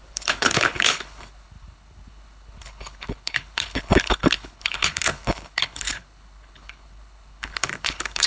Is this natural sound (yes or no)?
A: no